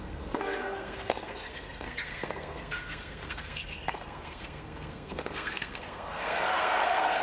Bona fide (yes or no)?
no